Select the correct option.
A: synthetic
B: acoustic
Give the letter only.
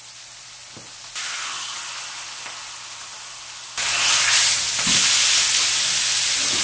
B